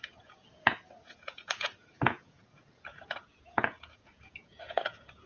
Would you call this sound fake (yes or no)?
yes